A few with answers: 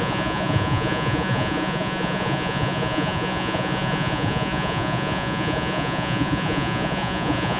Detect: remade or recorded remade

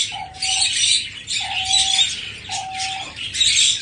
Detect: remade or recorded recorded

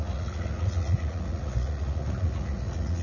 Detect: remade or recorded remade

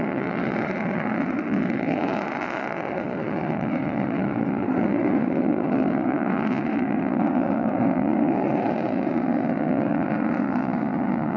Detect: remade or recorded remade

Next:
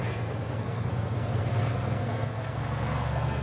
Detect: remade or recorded remade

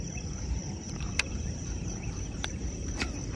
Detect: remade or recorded remade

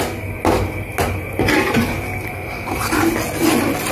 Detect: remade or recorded recorded